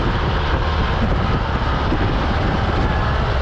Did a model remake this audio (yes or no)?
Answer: no